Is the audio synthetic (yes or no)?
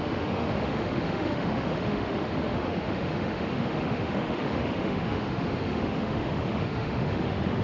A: yes